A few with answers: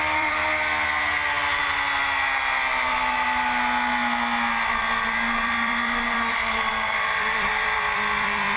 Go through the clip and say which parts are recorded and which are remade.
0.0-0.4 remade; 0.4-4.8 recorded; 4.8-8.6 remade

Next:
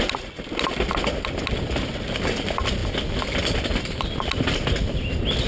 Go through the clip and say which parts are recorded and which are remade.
0.0-2.8 recorded; 2.8-3.6 remade; 3.6-5.5 recorded

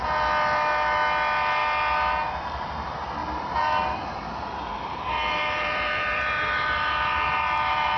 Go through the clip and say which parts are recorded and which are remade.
0.0-3.2 recorded; 3.2-8.0 remade

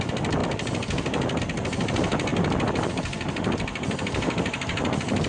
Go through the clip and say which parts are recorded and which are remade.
0.0-5.3 recorded

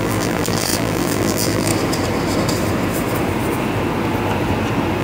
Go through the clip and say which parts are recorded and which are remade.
0.0-1.7 remade; 1.7-5.0 recorded

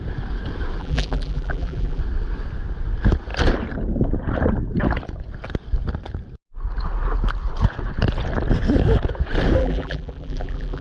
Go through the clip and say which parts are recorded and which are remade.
0.0-0.8 recorded; 0.8-2.0 remade; 2.0-9.6 recorded; 9.6-10.8 remade

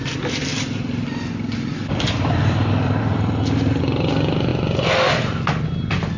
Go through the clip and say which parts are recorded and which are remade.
0.0-0.5 recorded; 0.5-3.8 remade; 3.8-6.2 recorded